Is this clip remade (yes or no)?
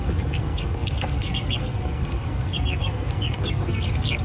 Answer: yes